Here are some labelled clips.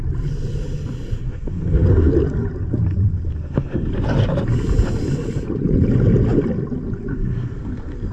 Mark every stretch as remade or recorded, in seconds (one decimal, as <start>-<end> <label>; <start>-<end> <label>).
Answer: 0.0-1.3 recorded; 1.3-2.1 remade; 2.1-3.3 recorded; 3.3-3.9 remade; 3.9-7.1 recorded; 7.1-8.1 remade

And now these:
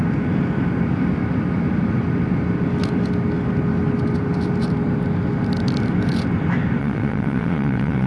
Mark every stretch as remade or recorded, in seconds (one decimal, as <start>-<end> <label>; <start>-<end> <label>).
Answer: 0.0-6.8 recorded; 6.8-8.1 remade

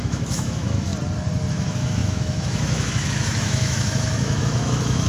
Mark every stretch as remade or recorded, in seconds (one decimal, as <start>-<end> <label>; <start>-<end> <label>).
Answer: 0.0-0.9 remade; 0.9-1.5 recorded; 1.5-5.1 remade

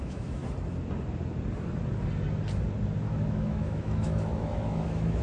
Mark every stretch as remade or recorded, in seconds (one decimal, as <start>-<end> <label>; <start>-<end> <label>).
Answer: 0.0-0.4 remade; 0.4-3.0 recorded; 3.0-5.2 remade

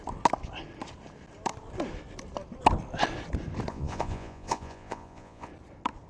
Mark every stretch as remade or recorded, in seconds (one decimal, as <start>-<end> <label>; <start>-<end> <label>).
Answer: 0.0-3.7 recorded; 3.7-5.5 remade; 5.5-6.1 recorded

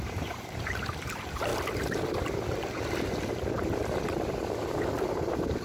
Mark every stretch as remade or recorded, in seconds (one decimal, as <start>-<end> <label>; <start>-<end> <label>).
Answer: 0.0-1.5 remade; 1.5-4.9 recorded; 4.9-5.6 remade